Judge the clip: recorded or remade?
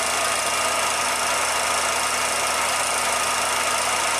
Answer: recorded